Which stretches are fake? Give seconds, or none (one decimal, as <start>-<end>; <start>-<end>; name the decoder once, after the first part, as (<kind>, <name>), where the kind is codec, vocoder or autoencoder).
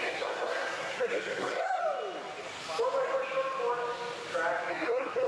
0.0-1.8 (codec, SNAC); 4.7-5.3